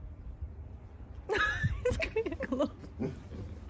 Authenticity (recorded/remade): recorded